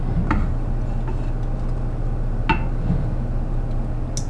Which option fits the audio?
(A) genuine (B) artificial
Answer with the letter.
A